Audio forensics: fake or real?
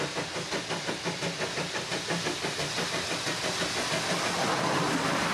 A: real